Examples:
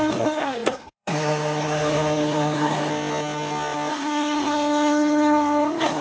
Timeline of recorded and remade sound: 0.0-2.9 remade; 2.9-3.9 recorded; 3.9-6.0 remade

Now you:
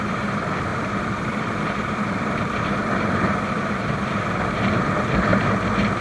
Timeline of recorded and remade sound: 0.0-5.3 remade; 5.3-6.0 recorded